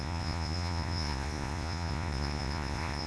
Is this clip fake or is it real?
fake